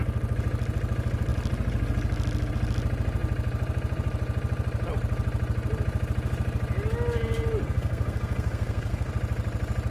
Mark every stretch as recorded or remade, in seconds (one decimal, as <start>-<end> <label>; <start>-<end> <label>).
0.0-7.6 recorded; 7.6-9.1 remade; 9.1-9.9 recorded